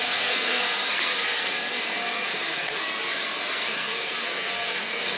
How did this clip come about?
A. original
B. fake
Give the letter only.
B